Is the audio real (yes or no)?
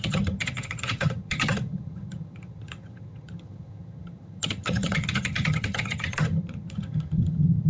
no